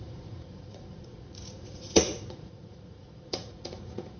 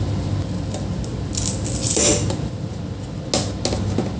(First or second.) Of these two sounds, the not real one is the first